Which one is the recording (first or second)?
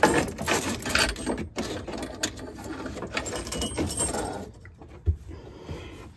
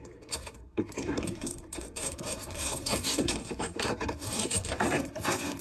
first